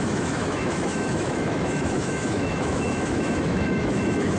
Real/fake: fake